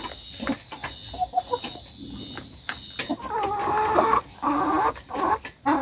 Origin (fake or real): real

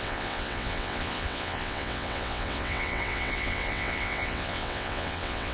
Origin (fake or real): fake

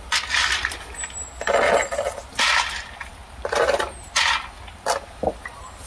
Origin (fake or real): real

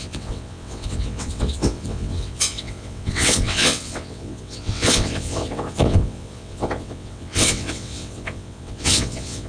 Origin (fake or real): fake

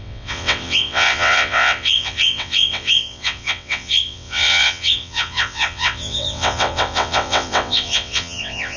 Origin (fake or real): fake